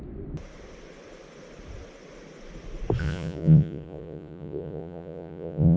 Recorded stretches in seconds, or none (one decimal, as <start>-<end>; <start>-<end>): 0.0-3.0